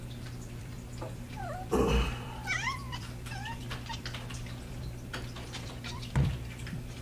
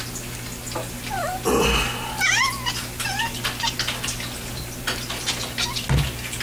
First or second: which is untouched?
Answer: second